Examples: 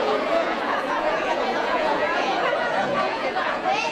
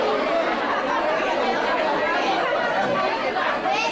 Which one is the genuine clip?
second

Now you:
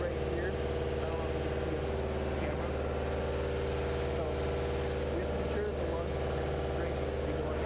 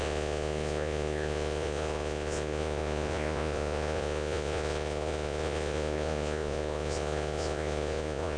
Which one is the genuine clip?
first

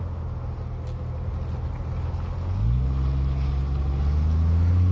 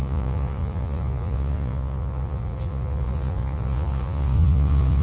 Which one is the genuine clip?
first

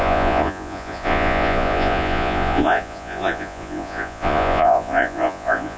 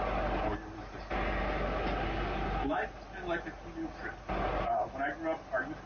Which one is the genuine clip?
second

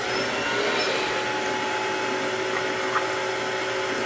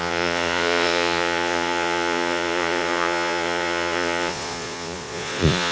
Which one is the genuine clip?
first